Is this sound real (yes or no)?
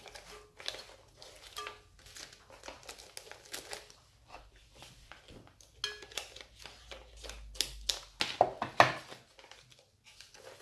yes